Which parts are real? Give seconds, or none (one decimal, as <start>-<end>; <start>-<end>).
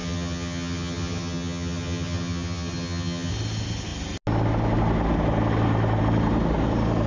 3.3-7.1